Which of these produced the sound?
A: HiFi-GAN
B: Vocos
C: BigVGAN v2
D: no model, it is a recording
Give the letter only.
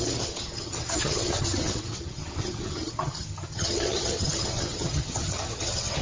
A